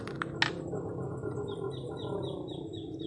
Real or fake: real